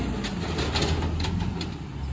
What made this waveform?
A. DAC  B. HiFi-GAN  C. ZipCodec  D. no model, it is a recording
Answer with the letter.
D